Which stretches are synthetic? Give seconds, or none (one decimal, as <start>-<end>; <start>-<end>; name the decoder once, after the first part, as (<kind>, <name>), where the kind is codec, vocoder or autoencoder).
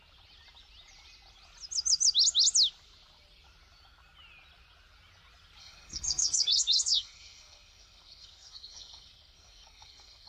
5.6-10.3 (codec, SNAC)